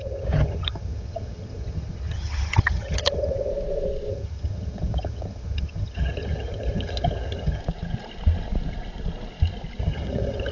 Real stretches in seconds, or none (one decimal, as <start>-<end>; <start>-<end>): 3.5-4.1; 7.6-9.8